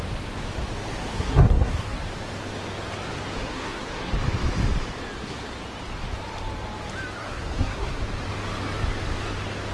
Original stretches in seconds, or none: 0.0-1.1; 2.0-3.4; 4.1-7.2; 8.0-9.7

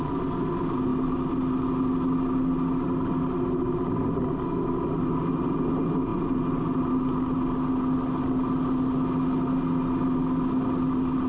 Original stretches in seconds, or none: 0.0-11.3

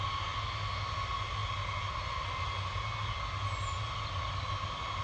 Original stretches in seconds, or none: 0.0-5.0

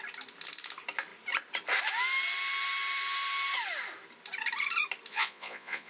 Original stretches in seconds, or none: 0.0-5.1

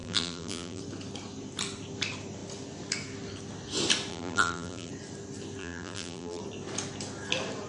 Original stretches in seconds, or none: 0.8-4.1; 4.9-5.6; 6.4-7.7